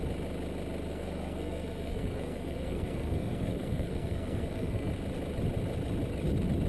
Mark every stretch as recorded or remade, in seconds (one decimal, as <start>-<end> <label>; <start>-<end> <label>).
0.0-0.9 recorded; 0.9-4.9 remade; 4.9-6.7 recorded